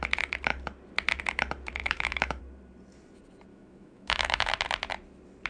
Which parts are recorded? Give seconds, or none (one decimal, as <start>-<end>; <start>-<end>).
0.0-1.8; 2.4-3.5; 4.5-5.5